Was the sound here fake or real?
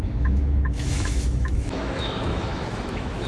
fake